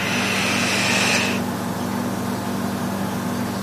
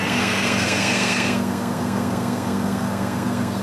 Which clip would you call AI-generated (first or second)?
second